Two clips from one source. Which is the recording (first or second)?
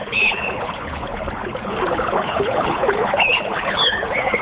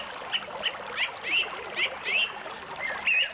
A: second